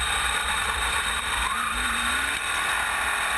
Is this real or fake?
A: fake